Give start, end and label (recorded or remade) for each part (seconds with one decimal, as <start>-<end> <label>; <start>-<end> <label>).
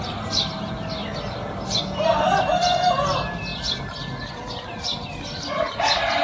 0.0-6.2 recorded